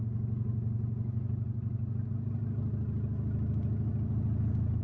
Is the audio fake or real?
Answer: real